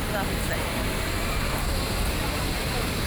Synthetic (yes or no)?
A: no